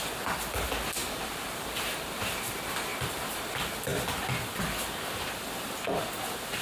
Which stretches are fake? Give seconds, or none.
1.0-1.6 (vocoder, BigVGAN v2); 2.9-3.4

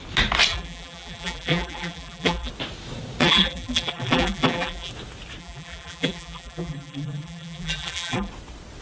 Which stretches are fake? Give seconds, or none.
0.5-2.5 (vocoder, BigVGAN v2); 3.2-4.9; 5.4-8.3

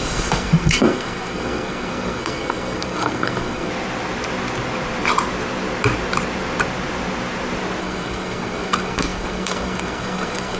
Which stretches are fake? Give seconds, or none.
0.0-3.7 (codec, SNAC); 7.8-10.6

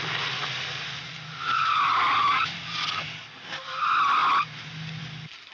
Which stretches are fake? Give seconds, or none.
none

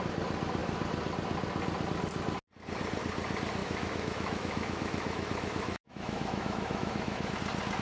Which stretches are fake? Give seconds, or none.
3.6-7.3 (autoencoder, DAC-VAE)